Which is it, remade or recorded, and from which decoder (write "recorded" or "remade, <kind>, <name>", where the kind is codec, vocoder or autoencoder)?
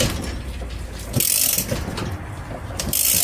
recorded